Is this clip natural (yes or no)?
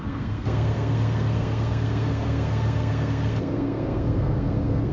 no